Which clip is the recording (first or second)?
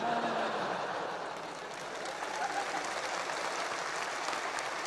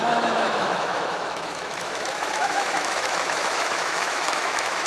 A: first